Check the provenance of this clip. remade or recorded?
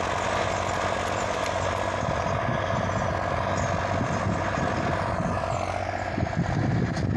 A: recorded